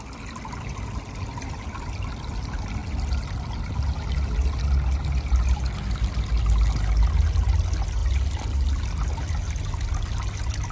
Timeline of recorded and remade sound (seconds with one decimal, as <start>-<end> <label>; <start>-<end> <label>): 0.0-10.7 recorded